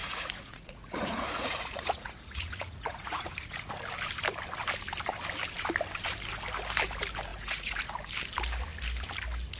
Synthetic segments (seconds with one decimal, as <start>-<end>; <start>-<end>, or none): 0.0-3.7; 7.3-7.9